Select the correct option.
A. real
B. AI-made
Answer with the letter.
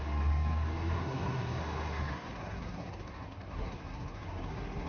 B